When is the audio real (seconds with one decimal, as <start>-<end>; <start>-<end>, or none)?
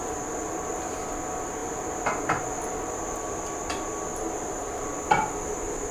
0.0-5.9